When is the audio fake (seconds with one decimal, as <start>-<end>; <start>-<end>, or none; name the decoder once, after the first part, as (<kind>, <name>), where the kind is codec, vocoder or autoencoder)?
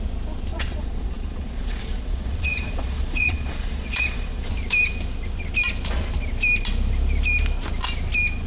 0.5-4.5 (vocoder, Vocos)